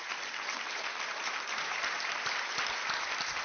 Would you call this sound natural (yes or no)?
no